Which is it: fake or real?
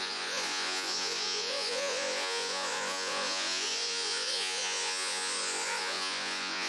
fake